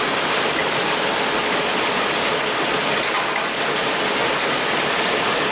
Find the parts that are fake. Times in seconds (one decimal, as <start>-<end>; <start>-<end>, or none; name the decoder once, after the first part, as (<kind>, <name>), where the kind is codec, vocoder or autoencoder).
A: 0.6-3.9 (vocoder, BigVGAN v2)